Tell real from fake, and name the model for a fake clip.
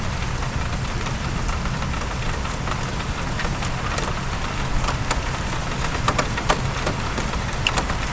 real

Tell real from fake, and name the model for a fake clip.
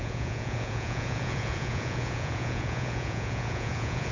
fake, vocoder, Vocos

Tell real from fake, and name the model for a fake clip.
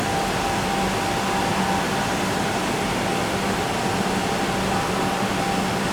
real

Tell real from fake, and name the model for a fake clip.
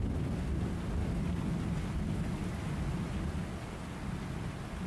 real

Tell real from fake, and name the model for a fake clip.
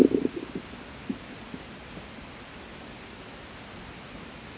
real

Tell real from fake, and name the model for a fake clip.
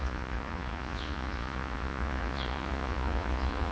fake, vocoder, Vocos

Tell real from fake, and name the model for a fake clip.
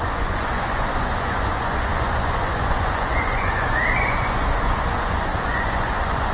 fake, vocoder, Vocos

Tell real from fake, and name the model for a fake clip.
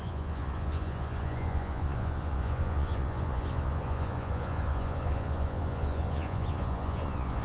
fake, vocoder, Vocos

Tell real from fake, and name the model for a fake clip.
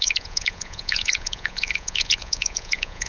fake, vocoder, Vocos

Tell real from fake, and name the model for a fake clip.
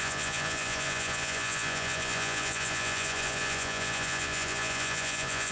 fake, vocoder, Vocos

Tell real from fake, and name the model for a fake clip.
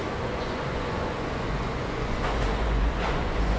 fake, vocoder, Vocos